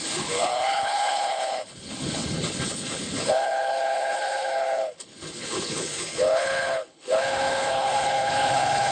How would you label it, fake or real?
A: fake